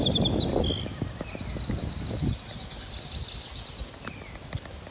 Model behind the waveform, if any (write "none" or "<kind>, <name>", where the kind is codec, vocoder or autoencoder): none